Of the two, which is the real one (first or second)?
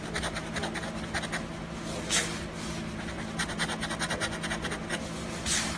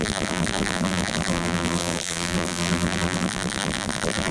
first